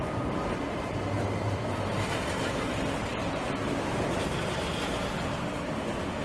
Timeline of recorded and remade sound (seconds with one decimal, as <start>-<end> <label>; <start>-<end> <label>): 0.0-6.2 recorded